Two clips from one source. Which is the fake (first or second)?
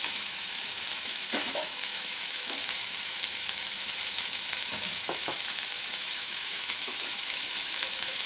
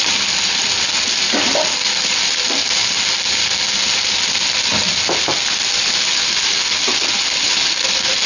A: first